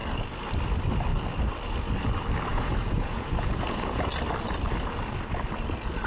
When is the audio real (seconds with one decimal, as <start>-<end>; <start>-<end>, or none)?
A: 0.0-2.5; 4.1-6.1